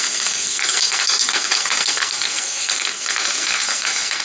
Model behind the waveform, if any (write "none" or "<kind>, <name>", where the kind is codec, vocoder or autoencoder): codec, SNAC